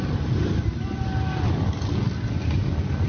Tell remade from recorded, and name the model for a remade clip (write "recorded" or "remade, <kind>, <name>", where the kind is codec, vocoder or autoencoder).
recorded